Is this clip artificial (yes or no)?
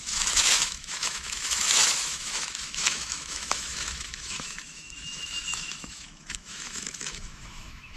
yes